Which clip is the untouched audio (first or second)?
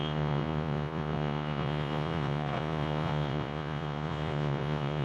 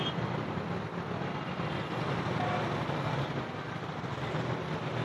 second